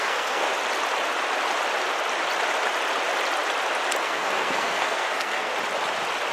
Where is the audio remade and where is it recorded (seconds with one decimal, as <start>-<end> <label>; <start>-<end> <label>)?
0.0-0.5 remade; 0.5-4.0 recorded; 4.0-5.5 remade; 5.5-6.3 recorded